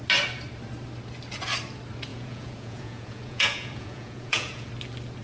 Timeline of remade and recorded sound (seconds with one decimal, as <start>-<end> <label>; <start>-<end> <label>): 0.0-2.1 recorded; 2.1-4.7 remade; 4.7-5.2 recorded